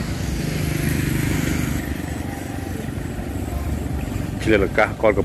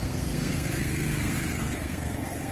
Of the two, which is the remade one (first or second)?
second